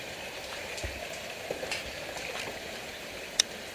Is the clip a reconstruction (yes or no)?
yes